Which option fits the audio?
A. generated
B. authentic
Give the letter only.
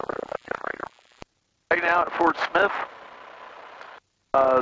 B